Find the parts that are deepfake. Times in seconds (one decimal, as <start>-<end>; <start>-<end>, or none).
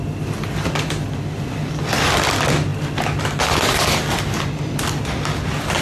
none